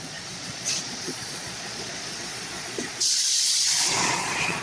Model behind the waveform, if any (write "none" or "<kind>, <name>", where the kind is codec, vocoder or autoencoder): vocoder, Vocos